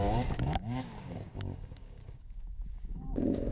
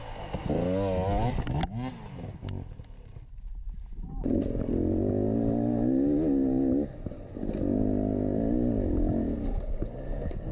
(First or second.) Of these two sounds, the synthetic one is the first